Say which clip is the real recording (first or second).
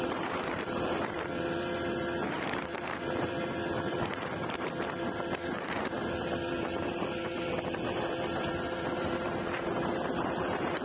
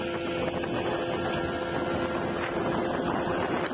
second